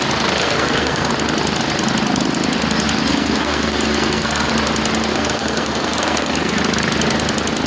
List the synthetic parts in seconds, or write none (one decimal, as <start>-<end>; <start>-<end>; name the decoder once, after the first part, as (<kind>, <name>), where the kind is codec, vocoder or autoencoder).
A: 0.4-1.1 (codec, SNAC); 3.1-4.5; 5.1-6.6